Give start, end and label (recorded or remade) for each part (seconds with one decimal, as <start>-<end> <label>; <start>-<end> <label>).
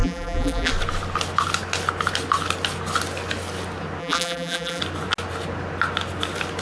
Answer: 0.0-0.7 remade; 0.7-4.0 recorded; 4.0-4.8 remade; 4.8-6.6 recorded